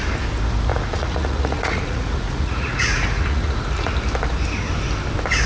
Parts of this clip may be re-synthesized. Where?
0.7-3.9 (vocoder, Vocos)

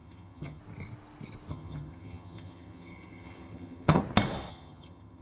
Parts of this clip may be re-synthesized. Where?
0.0-0.6 (vocoder, HiFi-GAN); 1.5-4.0; 4.5-5.2